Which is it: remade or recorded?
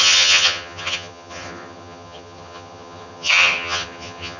remade